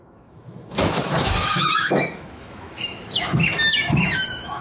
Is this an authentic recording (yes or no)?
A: no